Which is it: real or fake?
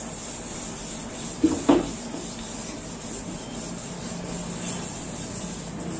real